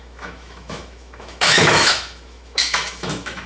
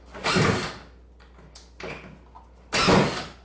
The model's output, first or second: first